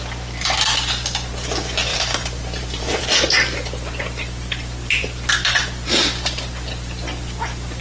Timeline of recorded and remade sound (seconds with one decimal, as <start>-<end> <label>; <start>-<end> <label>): 0.0-1.9 recorded; 1.9-3.0 remade; 3.0-7.8 recorded